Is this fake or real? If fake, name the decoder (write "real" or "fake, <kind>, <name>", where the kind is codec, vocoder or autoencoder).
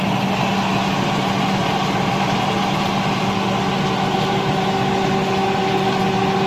real